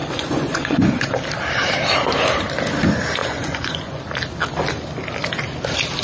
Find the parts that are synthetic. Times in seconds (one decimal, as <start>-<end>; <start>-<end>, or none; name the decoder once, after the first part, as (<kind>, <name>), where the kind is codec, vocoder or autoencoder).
0.0-1.1 (vocoder, Vocos); 3.2-4.0